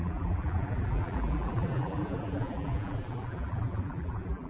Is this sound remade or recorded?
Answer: remade